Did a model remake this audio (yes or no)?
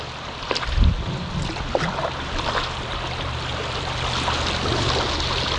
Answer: no